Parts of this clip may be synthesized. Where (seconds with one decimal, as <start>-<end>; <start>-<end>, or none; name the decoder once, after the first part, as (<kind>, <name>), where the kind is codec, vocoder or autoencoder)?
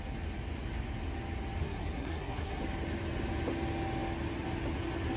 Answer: 1.6-2.6 (codec, SNAC)